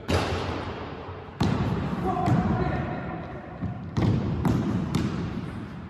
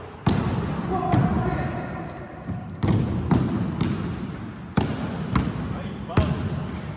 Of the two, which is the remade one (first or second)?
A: first